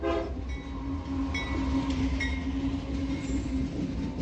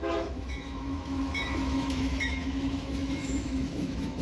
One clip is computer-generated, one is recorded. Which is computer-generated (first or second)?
second